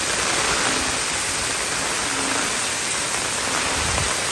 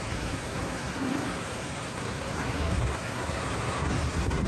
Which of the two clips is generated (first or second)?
second